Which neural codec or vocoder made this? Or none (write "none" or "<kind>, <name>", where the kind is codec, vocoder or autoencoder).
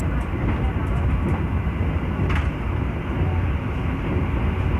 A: none